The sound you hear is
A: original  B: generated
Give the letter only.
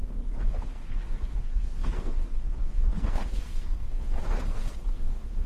B